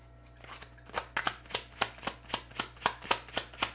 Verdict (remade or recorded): recorded